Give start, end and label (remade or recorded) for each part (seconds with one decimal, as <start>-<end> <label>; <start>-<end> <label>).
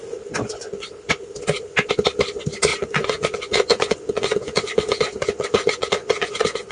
0.0-0.9 remade; 0.9-2.7 recorded; 2.7-6.7 remade